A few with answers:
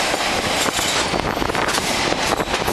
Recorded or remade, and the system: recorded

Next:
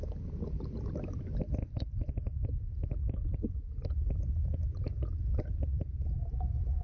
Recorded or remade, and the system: recorded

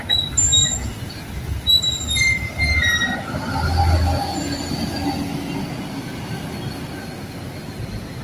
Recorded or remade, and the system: recorded